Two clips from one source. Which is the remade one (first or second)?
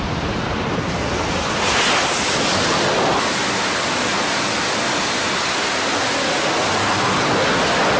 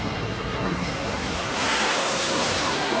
second